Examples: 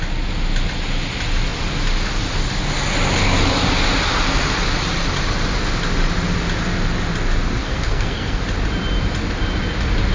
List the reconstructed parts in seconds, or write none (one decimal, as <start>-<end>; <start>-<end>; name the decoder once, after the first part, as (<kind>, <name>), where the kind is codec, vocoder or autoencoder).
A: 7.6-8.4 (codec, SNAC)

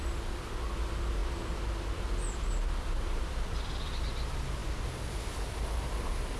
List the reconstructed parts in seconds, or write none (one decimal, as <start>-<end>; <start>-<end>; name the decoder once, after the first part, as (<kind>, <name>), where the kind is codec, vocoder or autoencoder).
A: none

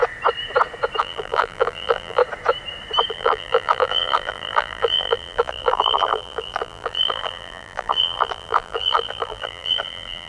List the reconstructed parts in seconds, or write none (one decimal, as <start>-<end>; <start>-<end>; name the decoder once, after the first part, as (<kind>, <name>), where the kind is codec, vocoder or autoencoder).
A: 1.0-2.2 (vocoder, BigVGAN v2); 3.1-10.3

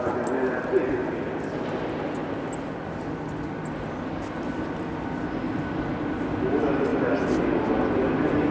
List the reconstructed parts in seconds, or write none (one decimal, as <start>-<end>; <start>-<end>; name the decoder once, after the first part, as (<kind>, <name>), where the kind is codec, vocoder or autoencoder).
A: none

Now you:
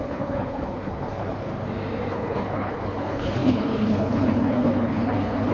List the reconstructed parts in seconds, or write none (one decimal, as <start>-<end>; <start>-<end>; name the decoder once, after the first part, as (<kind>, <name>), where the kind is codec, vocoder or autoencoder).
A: 0.0-1.5 (codec, HILCodec); 2.1-5.5